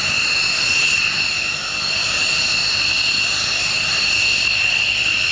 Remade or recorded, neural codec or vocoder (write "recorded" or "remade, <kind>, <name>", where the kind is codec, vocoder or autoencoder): recorded